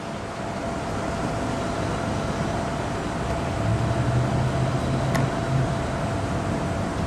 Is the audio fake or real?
real